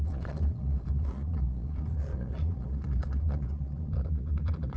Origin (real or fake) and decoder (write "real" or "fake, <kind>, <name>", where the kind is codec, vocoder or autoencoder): fake, vocoder, Vocos